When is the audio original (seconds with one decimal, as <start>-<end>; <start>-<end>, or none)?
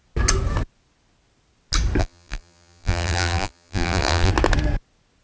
0.0-2.0; 4.3-5.2